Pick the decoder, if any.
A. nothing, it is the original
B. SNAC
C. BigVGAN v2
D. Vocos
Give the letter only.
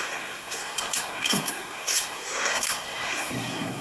B